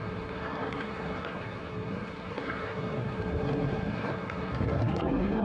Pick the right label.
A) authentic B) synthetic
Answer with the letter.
B